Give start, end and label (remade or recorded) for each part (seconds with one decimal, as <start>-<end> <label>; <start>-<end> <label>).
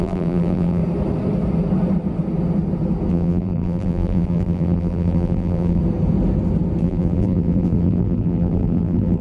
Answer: 0.0-0.8 remade; 0.8-3.1 recorded; 3.1-5.8 remade; 5.8-6.8 recorded; 6.8-9.2 remade